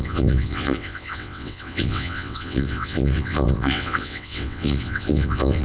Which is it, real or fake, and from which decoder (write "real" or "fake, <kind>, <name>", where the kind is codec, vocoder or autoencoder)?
fake, vocoder, WaveNeXt